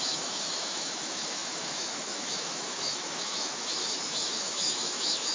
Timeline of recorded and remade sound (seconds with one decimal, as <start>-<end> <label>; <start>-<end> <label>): 0.0-5.3 remade